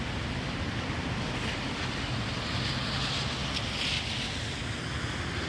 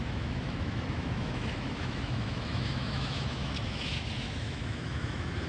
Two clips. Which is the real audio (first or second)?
first